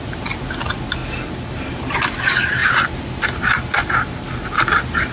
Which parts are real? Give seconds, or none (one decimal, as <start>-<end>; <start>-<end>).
0.0-5.1

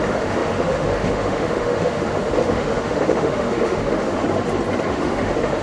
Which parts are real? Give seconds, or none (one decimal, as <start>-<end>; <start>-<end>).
4.2-4.9

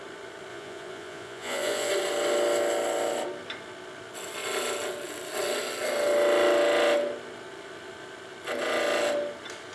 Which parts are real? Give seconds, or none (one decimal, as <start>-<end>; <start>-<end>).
0.0-0.5; 1.9-9.7

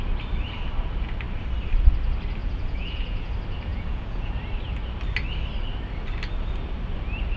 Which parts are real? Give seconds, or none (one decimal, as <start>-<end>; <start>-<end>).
0.0-2.4; 3.3-3.7; 4.3-7.4

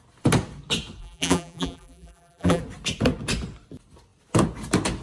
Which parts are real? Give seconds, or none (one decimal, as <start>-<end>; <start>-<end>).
0.0-1.0; 2.6-5.0

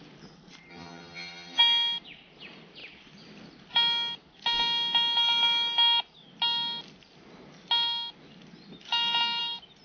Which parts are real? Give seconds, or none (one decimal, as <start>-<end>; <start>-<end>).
0.0-0.7; 1.6-9.8